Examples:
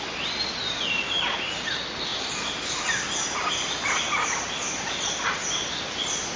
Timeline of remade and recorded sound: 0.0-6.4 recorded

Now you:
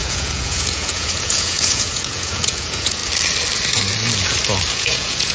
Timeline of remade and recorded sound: 0.0-3.0 remade; 3.0-4.7 recorded; 4.7-5.3 remade

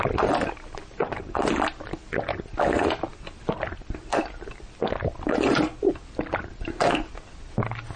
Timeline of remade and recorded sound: 0.0-8.0 recorded

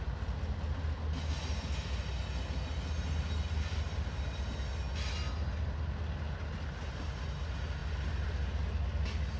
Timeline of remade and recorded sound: 0.0-9.4 recorded

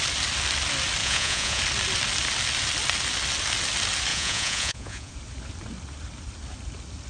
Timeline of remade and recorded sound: 0.0-1.0 recorded; 1.0-1.6 remade; 1.6-4.1 recorded; 4.1-5.1 remade; 5.1-7.1 recorded

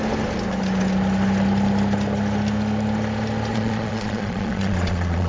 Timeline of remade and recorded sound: 0.0-3.5 recorded; 3.5-5.3 remade

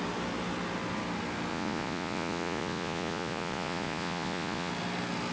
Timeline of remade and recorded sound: 0.0-1.5 recorded; 1.5-4.7 remade; 4.7-5.3 recorded

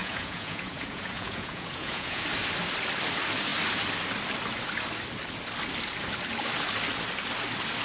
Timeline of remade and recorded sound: 0.0-2.2 remade; 2.2-7.8 recorded